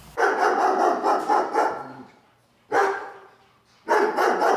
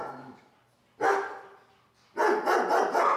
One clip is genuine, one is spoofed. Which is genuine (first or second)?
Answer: second